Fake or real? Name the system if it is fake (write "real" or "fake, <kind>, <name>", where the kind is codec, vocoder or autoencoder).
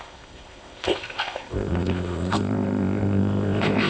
fake, codec, ZipCodec